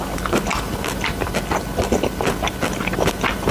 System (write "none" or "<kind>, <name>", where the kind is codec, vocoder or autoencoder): none